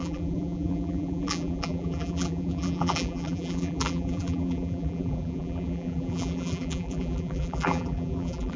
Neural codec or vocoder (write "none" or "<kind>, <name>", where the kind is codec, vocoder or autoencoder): vocoder, BigVGAN v2